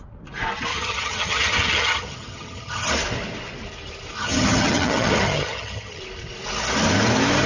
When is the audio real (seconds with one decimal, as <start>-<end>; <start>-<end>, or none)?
0.0-0.7; 2.9-4.2; 6.0-7.5